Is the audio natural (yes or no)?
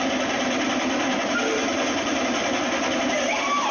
no